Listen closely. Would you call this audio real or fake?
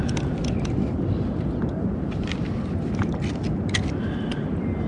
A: real